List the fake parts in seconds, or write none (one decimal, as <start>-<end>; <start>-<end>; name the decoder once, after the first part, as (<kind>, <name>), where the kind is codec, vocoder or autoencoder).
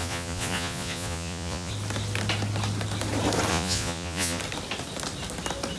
0.0-1.7 (vocoder, Vocos); 3.5-4.4